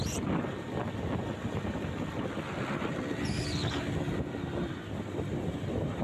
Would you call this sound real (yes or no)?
yes